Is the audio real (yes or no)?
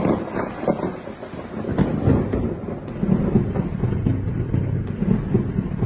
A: yes